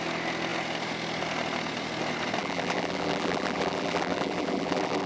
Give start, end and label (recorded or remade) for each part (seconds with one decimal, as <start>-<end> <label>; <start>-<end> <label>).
0.0-2.4 recorded; 2.4-5.1 remade